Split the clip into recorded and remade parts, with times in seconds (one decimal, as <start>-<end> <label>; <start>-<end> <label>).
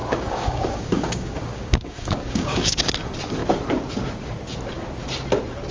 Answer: 0.0-2.9 remade; 2.9-5.7 recorded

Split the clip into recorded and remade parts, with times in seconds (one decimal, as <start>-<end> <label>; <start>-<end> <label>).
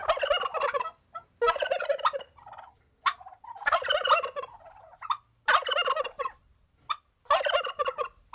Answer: 0.0-8.3 recorded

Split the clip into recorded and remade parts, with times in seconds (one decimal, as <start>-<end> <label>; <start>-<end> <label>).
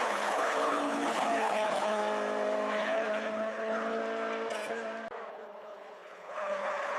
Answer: 0.0-2.0 remade; 2.0-2.7 recorded; 2.7-4.0 remade; 4.0-5.3 recorded; 5.3-7.0 remade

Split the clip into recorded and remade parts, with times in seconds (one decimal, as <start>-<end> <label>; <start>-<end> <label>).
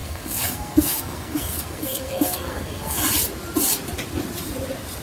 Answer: 0.0-3.0 remade; 3.0-5.0 recorded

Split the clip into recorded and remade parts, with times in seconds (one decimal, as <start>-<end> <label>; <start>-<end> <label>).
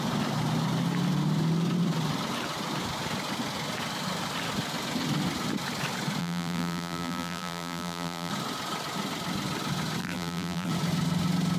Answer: 0.0-6.2 recorded; 6.2-8.3 remade; 8.3-10.0 recorded; 10.0-10.7 remade; 10.7-11.6 recorded